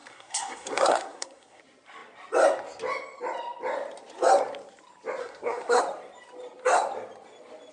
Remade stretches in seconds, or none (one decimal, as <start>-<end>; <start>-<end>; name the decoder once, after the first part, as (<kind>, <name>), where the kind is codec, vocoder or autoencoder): 0.0-1.6 (codec, SNAC); 5.2-5.8